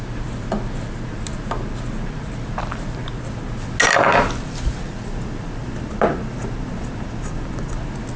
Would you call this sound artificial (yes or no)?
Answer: no